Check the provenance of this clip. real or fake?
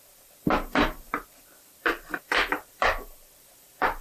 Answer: fake